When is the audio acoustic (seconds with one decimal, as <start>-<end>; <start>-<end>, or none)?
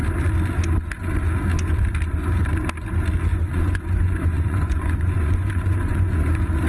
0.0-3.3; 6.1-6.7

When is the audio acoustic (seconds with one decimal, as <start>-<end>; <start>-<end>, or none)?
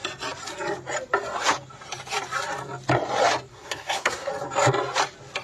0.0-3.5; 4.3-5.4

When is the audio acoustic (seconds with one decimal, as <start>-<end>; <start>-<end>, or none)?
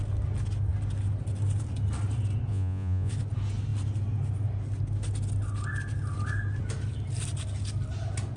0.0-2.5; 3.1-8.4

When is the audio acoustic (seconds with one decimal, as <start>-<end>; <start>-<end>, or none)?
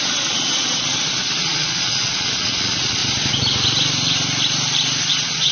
3.0-5.1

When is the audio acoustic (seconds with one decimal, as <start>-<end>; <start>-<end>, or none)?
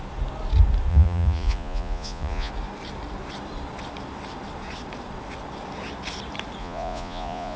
0.0-0.9; 2.5-6.6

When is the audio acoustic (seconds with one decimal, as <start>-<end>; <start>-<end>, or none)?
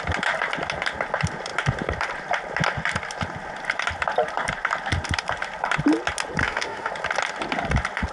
0.0-6.4; 6.9-8.1